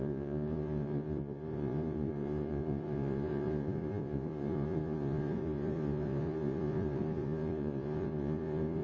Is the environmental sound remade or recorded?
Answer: remade